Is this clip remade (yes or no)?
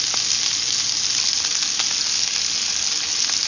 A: no